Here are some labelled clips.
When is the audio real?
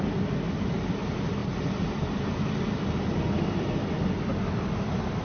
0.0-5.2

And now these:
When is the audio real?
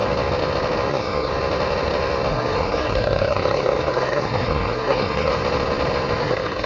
0.0-0.9; 1.3-2.3; 5.3-6.2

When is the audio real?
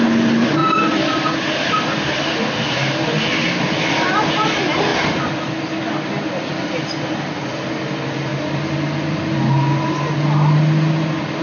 0.0-11.4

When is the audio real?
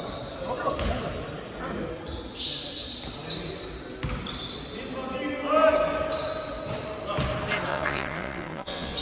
0.0-7.7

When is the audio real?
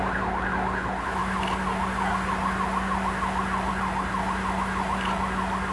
0.0-5.7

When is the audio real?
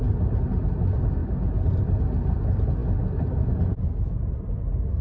0.0-5.0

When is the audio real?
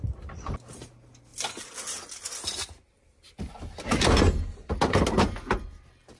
0.0-6.2